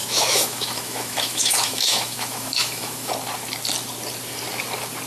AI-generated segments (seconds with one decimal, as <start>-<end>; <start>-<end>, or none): 0.0-3.1